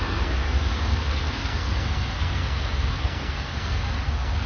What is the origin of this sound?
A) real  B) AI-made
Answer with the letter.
B